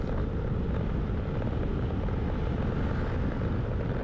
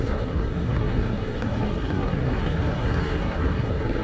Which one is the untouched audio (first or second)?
first